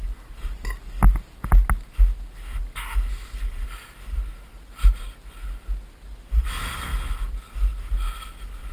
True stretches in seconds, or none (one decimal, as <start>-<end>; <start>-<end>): 0.0-8.7